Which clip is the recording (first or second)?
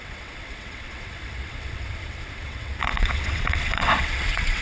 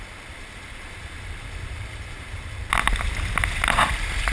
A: second